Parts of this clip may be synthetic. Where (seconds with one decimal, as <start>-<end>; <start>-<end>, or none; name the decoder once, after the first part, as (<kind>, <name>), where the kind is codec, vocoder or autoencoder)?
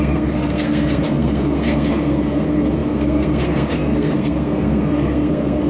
0.0-5.7 (codec, SNAC)